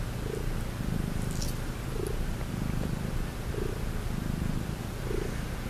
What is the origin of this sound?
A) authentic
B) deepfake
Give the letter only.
A